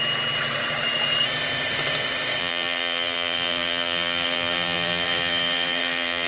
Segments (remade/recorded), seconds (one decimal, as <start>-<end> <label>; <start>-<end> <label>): 0.0-2.4 recorded; 2.4-6.3 remade